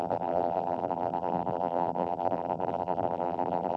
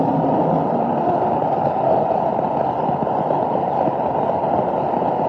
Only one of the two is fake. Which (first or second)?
first